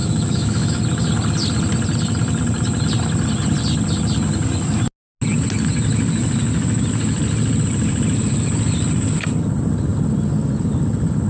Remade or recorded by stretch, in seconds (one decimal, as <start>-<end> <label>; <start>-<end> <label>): 0.0-0.8 remade; 0.8-11.3 recorded